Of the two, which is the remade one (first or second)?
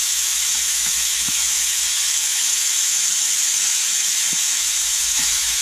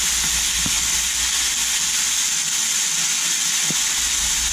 first